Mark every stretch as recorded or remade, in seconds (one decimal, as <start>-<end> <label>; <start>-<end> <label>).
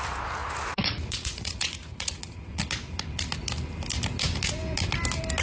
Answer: 0.0-0.4 recorded; 0.4-2.6 remade; 2.6-5.4 recorded